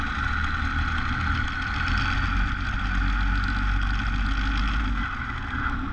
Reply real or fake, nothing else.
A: real